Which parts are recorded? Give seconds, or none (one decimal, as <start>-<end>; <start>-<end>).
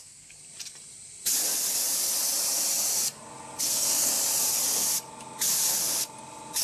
0.4-3.6; 4.1-6.6